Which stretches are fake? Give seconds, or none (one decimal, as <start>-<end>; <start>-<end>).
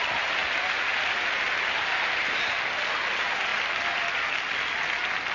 none